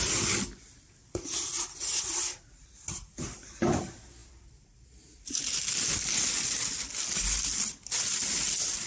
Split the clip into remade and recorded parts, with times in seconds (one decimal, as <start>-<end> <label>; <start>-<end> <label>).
0.0-8.9 recorded